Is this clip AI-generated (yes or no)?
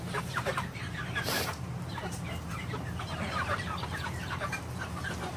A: yes